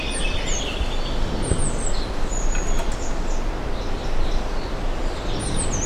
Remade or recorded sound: recorded